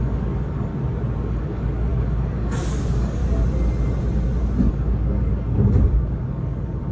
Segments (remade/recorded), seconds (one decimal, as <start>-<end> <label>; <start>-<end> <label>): 0.0-0.7 remade; 0.7-1.2 recorded; 1.2-3.2 remade; 3.2-4.7 recorded; 4.7-6.9 remade